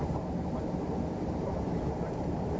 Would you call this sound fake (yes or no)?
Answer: yes